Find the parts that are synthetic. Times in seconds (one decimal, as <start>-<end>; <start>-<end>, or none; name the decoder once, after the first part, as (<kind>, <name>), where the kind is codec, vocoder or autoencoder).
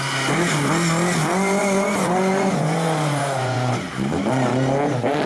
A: 1.6-3.9 (vocoder, Vocos)